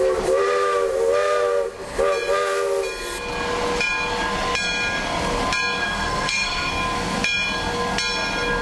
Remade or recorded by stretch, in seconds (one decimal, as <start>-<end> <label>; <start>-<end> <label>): 0.0-5.8 recorded; 5.8-6.7 remade; 6.7-8.6 recorded